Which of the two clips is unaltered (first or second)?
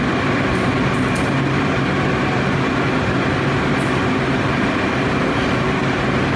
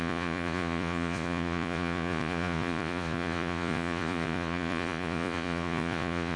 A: first